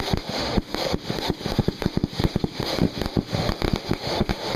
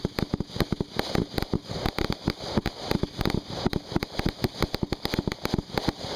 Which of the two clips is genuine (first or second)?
second